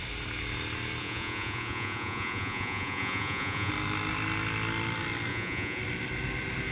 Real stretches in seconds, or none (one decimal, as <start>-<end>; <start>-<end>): 0.0-1.0; 3.7-5.3; 5.8-6.7

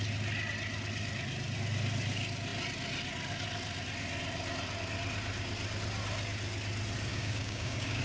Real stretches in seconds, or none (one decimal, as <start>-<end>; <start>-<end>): 0.0-7.1

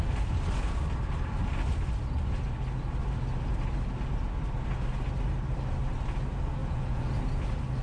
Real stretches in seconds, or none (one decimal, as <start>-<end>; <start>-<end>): 0.0-6.6; 7.1-7.8